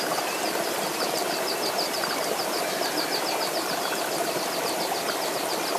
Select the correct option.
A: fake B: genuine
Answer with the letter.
B